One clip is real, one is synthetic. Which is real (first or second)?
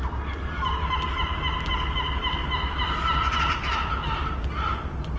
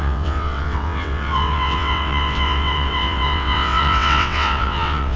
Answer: first